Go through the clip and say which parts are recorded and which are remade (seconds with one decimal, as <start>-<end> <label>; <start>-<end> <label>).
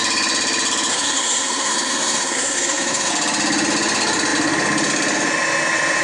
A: 0.0-0.9 recorded; 0.9-3.1 remade; 3.1-6.0 recorded